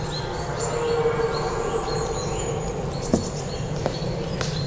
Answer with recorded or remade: recorded